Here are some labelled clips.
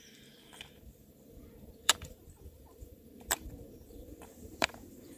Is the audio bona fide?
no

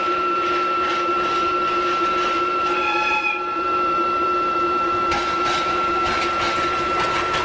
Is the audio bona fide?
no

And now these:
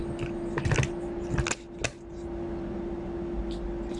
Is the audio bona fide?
yes